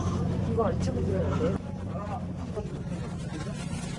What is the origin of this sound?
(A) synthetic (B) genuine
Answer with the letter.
A